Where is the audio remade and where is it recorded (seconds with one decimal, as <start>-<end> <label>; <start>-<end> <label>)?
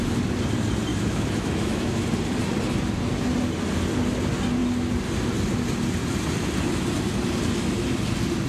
0.0-0.9 recorded; 0.9-2.0 remade; 2.0-8.5 recorded